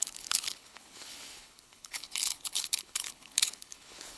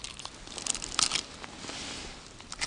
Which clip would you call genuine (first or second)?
second